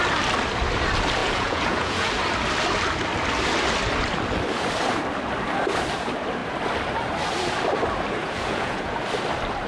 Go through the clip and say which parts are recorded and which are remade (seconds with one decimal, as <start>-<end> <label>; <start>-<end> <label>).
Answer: 0.0-1.2 recorded; 1.2-2.1 remade; 2.1-8.2 recorded; 8.2-8.9 remade; 8.9-9.7 recorded